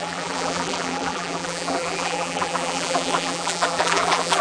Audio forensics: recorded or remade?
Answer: remade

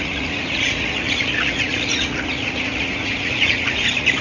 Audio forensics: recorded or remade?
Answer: remade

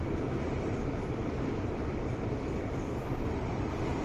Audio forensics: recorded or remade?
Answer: recorded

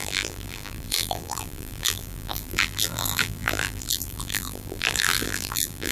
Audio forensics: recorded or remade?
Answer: remade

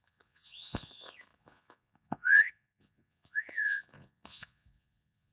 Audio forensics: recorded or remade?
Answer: remade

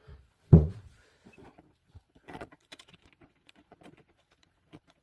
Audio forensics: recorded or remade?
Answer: remade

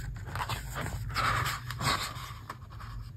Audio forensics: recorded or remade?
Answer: recorded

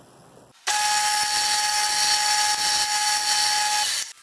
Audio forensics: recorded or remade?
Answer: recorded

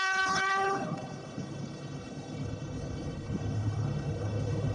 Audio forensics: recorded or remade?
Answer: remade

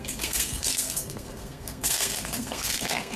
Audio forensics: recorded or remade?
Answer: remade